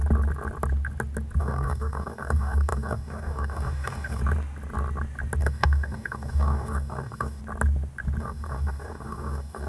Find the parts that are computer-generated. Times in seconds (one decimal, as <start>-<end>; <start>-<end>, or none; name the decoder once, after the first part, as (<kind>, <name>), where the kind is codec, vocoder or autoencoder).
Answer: 1.4-4.2 (codec, DAC); 5.4-7.4; 8.2-9.7